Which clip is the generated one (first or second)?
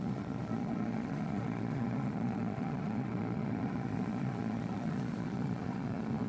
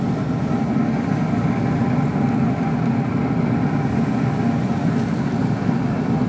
first